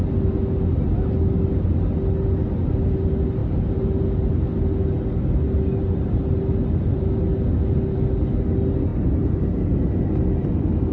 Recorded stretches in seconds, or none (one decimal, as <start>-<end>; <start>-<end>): 0.0-10.9